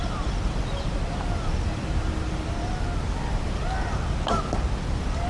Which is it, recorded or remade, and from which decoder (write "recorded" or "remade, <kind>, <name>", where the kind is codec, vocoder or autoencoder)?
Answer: recorded